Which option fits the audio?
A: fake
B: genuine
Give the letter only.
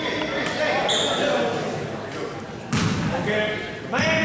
B